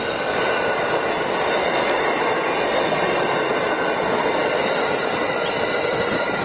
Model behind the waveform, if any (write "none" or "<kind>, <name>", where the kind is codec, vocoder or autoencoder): none